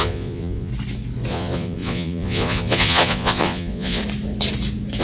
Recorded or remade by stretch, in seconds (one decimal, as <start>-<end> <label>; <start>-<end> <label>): 0.0-0.7 remade; 0.7-1.3 recorded; 1.3-4.0 remade; 4.0-5.0 recorded